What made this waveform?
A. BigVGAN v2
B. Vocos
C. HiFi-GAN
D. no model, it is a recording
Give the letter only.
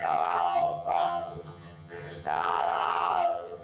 C